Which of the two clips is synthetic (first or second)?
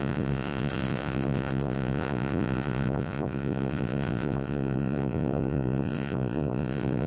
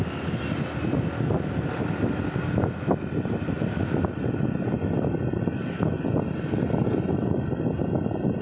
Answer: first